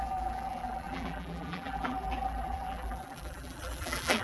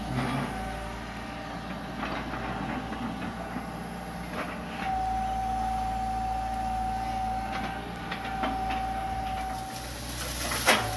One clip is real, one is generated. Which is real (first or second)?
second